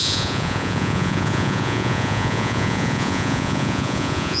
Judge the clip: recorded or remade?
remade